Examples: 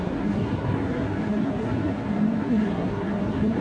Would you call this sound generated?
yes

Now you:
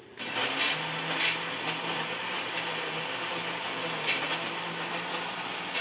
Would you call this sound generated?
no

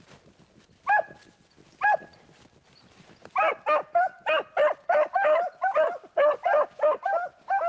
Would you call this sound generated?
no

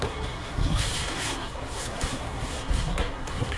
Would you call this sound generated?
yes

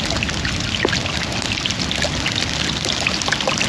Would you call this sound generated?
no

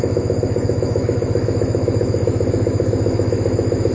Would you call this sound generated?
yes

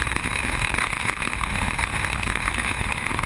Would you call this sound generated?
yes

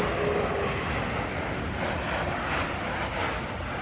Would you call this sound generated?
no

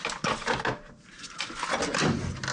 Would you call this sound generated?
no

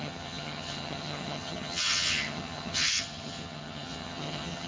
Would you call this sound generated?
yes